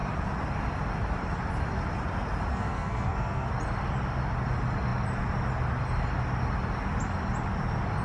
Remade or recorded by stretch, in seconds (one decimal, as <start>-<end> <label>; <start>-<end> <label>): 0.0-2.5 recorded; 2.5-3.5 remade; 3.5-8.0 recorded